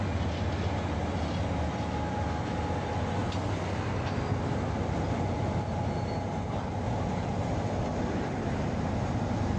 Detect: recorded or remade recorded